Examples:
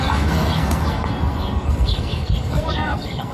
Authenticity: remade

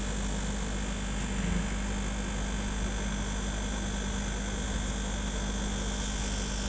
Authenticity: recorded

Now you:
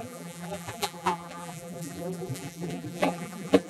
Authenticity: remade